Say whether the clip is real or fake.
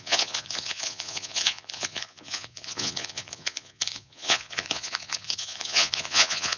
fake